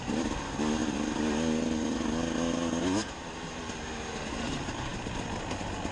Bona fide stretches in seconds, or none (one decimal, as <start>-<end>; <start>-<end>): 0.8-4.3